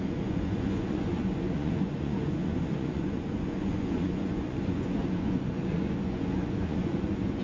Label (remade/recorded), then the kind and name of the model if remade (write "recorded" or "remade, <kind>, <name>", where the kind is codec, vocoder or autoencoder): remade, vocoder, Vocos